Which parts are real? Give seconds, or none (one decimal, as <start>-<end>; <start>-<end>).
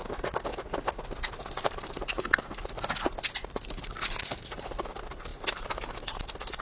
0.0-6.6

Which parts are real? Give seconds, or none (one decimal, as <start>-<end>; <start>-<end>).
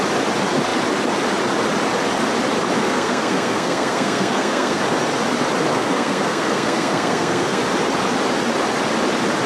0.0-2.8; 4.8-5.7; 7.6-9.5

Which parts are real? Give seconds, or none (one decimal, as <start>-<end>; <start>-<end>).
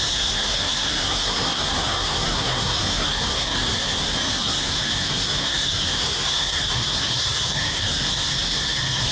none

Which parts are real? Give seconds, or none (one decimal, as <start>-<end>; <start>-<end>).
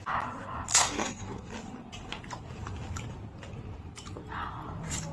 0.0-0.7; 1.5-5.1